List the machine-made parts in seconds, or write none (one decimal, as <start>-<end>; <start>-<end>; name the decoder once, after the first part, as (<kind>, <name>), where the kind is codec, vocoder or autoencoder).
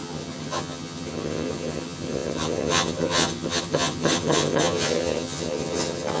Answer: 0.0-6.2 (vocoder, HiFi-GAN)